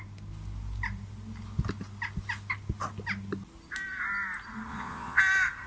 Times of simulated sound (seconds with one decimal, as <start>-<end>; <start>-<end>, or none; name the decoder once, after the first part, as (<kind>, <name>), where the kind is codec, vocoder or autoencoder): 4.7-5.2 (vocoder, Vocos)